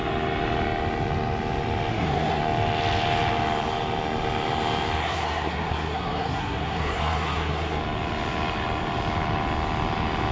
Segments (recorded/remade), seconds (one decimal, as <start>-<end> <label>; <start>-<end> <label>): 0.0-1.9 recorded; 1.9-2.4 remade; 2.4-5.0 recorded; 5.0-7.8 remade; 7.8-10.3 recorded